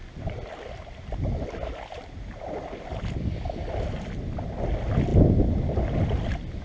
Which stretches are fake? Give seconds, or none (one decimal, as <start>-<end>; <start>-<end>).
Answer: none